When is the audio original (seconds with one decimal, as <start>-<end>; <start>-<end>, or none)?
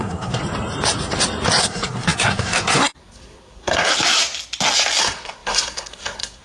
0.4-1.6; 3.9-5.0